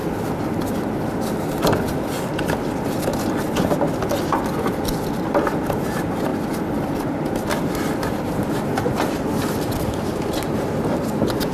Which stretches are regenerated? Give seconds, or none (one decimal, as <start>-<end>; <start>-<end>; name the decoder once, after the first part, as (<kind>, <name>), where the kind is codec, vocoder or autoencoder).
none